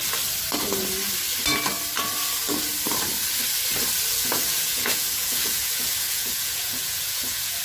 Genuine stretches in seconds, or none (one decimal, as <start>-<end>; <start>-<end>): 0.0-4.1